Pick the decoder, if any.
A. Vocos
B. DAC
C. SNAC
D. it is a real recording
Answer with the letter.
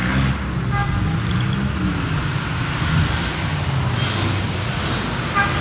D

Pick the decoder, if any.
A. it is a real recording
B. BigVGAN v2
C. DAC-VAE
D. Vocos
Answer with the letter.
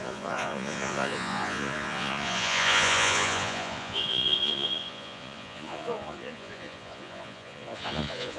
D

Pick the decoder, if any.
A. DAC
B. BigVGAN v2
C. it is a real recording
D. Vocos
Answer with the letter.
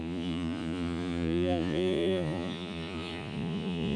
D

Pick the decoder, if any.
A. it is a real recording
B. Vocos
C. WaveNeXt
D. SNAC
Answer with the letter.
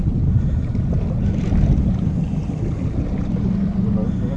A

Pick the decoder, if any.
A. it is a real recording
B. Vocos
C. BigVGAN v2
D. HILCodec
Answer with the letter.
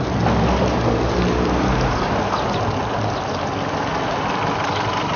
A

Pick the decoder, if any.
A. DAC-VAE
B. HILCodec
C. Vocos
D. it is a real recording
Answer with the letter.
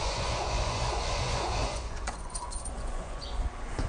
C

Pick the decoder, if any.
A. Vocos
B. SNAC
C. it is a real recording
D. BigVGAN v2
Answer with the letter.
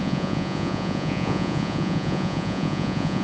A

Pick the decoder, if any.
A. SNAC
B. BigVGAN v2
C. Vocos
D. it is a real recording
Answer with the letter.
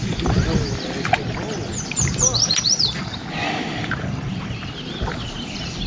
D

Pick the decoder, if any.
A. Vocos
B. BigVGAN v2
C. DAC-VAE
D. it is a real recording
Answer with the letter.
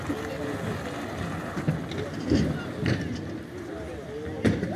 D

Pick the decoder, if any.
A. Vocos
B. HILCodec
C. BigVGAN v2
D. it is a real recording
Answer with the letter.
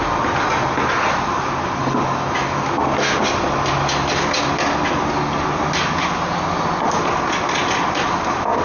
D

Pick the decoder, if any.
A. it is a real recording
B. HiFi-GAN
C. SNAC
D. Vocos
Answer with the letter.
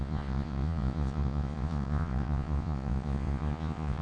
D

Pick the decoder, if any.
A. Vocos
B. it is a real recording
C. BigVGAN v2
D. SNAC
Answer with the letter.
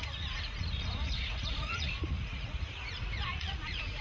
A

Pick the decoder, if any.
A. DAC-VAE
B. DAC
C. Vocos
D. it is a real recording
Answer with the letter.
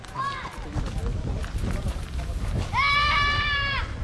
D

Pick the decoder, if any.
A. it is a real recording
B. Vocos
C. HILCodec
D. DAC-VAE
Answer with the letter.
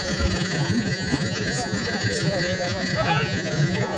B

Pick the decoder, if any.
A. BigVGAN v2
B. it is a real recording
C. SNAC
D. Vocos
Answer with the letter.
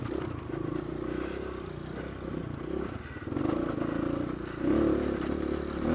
B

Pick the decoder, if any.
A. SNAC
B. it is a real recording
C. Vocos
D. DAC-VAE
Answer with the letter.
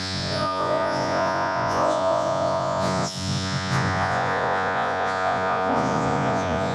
C